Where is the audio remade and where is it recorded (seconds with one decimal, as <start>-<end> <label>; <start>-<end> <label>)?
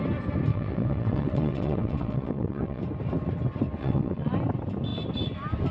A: 0.0-0.5 recorded; 0.5-2.8 remade; 2.8-3.8 recorded; 3.8-4.3 remade; 4.3-5.7 recorded